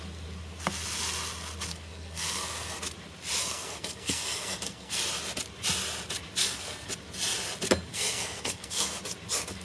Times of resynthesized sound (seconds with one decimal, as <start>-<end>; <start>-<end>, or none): 1.7-2.8; 3.4-5.0; 6.4-6.9; 7.9-9.0